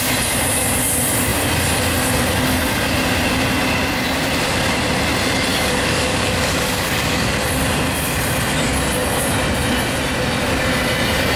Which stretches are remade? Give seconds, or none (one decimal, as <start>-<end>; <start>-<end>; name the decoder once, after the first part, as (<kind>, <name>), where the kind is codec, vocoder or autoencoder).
5.5-7.3 (codec, DAC)

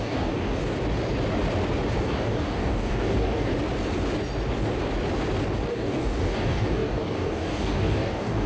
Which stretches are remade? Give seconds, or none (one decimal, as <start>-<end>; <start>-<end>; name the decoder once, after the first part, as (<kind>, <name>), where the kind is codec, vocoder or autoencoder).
0.0-0.6 (codec, DAC); 2.0-3.5; 5.7-8.5

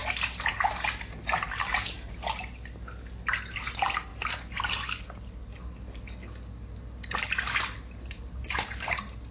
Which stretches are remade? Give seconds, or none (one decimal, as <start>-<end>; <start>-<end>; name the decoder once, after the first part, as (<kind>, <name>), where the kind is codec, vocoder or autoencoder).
none

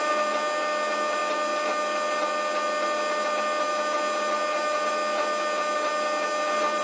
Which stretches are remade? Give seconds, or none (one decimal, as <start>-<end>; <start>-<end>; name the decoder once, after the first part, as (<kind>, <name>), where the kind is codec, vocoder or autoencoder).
none

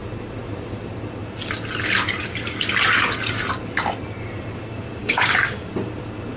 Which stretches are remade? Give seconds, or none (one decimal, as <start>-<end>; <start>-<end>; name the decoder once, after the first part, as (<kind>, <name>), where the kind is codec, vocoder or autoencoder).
5.0-5.7 (codec, DAC)

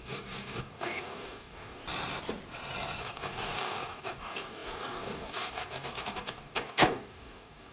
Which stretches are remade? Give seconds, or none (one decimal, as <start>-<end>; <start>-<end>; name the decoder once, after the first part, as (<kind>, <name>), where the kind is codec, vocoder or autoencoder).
0.0-1.8 (codec, DAC); 3.0-7.7